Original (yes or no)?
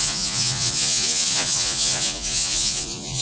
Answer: no